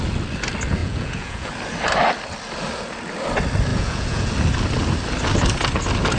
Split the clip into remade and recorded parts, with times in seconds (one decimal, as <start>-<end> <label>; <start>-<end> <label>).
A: 0.0-0.8 recorded; 0.8-1.5 remade; 1.5-3.7 recorded; 3.7-4.3 remade; 4.3-6.2 recorded